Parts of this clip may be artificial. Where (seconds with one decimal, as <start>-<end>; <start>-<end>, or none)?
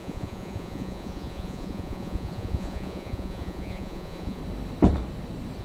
0.0-4.4